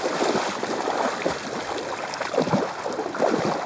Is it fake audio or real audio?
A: real